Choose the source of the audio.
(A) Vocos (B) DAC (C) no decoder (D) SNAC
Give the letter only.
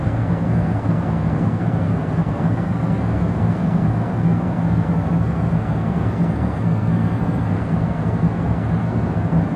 D